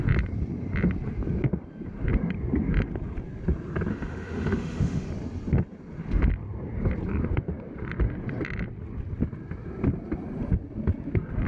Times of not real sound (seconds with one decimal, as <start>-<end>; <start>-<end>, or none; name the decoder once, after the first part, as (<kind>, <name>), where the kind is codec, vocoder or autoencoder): 3.9-5.1 (autoencoder, DAC-VAE)